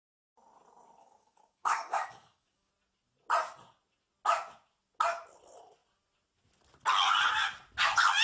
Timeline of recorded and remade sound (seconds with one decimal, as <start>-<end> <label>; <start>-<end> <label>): 0.0-1.0 recorded; 1.0-2.7 remade; 2.7-8.2 recorded